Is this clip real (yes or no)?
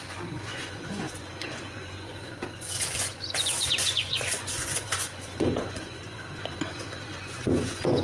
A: no